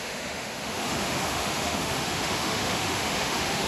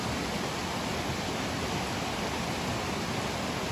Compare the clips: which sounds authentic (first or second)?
second